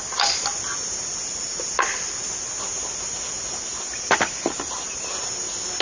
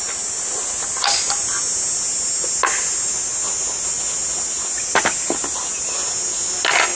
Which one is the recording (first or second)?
second